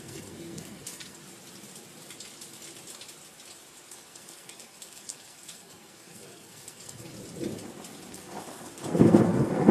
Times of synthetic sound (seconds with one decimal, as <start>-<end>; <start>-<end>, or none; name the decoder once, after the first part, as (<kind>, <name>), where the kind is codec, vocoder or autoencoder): 0.0-1.2 (codec, SNAC); 3.9-7.1; 8.1-9.7